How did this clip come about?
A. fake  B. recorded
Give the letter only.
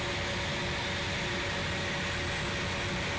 B